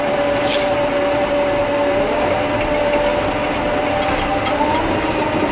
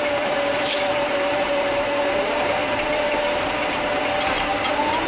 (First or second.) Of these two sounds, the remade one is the second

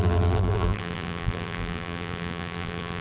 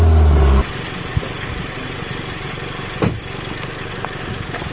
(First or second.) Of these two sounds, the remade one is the first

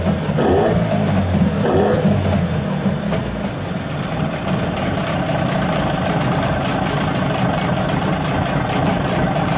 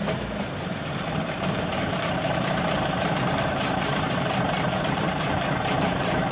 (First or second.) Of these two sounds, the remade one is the second